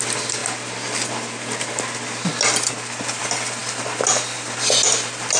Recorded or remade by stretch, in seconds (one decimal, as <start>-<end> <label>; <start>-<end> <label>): 0.0-5.4 recorded